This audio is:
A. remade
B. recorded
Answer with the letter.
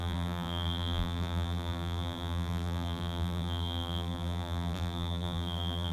A